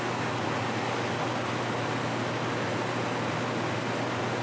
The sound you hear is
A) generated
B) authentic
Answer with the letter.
B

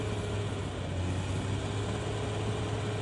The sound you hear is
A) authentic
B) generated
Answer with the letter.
A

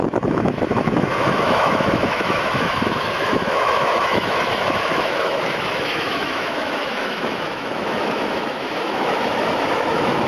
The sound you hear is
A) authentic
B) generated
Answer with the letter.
B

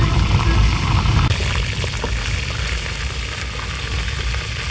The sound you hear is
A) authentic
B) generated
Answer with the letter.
A